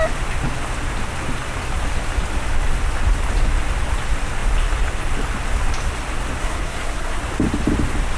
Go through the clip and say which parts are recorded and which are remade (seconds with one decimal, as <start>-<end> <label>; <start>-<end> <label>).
0.0-6.4 recorded; 6.4-7.2 remade; 7.2-8.2 recorded